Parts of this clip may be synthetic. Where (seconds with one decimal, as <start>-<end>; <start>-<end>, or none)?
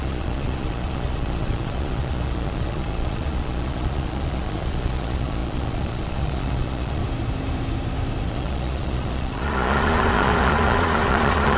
0.0-7.0; 8.3-11.6